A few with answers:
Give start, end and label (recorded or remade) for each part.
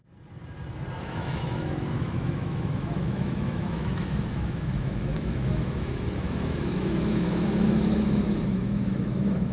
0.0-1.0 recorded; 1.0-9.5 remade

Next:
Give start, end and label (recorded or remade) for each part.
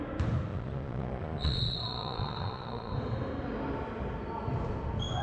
0.0-0.5 recorded; 0.5-2.9 remade; 2.9-5.2 recorded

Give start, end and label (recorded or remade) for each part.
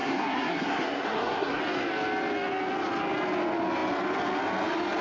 0.0-1.6 remade; 1.6-5.0 recorded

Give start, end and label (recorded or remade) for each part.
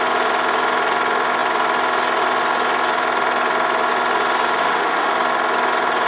0.0-4.6 recorded; 4.6-5.1 remade; 5.1-6.1 recorded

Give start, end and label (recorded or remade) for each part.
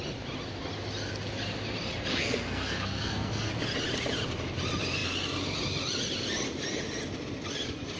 0.0-2.1 recorded; 2.1-3.5 remade; 3.5-8.0 recorded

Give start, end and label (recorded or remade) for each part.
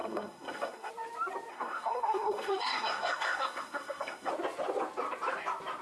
0.0-0.9 remade; 0.9-1.5 recorded; 1.5-4.3 remade; 4.3-5.8 recorded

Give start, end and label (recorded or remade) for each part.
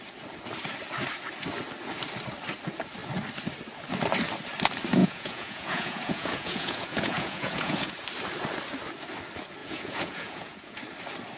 0.0-5.0 recorded; 5.0-7.9 remade; 7.9-9.6 recorded; 9.6-10.8 remade; 10.8-11.4 recorded